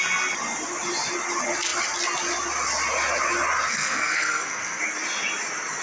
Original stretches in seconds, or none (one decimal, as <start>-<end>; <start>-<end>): 0.0-3.7; 4.8-5.8